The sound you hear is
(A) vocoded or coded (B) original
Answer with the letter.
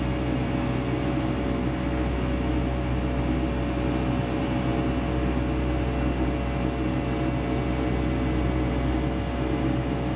B